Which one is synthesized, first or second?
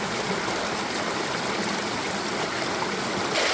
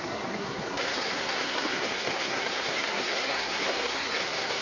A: second